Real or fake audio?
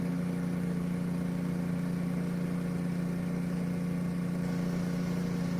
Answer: real